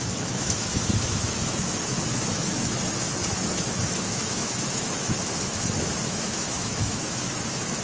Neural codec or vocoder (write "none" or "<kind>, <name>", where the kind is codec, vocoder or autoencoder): autoencoder, DAC-VAE